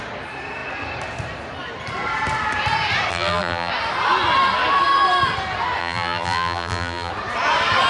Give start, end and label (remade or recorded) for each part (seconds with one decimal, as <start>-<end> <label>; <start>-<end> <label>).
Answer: 0.0-3.1 recorded; 3.1-3.7 remade; 3.7-5.8 recorded; 5.8-7.1 remade; 7.1-7.9 recorded